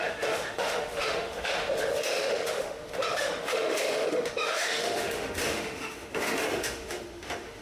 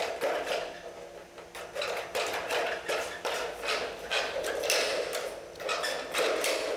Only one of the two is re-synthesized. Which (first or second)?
first